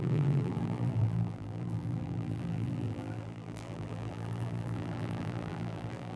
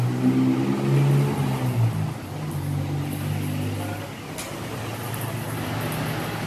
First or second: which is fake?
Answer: first